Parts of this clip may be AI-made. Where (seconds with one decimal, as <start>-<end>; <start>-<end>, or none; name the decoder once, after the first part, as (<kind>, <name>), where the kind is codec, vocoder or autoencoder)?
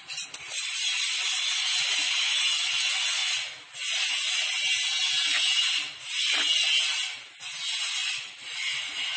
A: 0.6-1.6 (vocoder, BigVGAN v2); 8.0-9.2